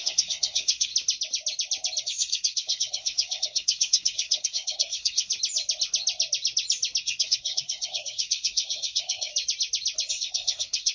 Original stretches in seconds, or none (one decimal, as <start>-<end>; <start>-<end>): 0.9-2.0; 5.3-7.0; 9.3-10.1